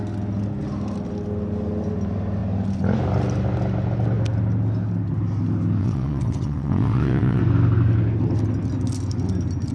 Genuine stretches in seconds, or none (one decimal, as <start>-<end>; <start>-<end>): 0.0-5.8; 7.4-9.7